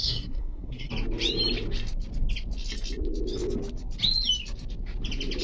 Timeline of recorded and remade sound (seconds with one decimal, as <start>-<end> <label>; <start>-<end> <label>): 0.0-0.9 remade; 0.9-5.4 recorded

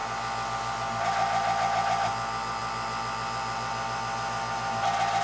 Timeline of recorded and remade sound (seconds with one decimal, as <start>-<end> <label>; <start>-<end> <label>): 0.0-5.2 recorded

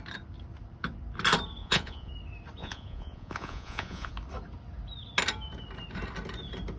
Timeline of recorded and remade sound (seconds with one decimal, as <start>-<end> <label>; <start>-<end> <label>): 0.0-1.6 recorded; 1.6-2.1 remade; 2.1-2.6 recorded; 2.6-4.1 remade; 4.1-6.8 recorded